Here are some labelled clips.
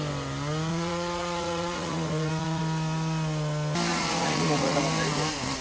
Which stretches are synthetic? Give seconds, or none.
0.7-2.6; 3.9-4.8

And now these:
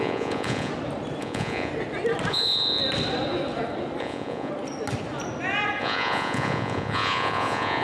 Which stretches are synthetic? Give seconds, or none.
0.0-0.7; 1.2-1.7; 2.3-2.8; 4.0-4.5; 5.8-7.8

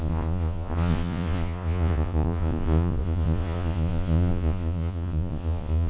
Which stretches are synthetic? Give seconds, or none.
0.0-5.9

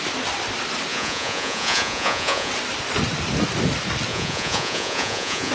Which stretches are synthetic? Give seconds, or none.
0.9-2.5; 4.1-5.5

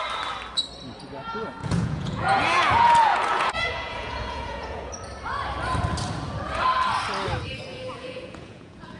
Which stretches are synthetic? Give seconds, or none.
1.6-4.9; 7.7-9.0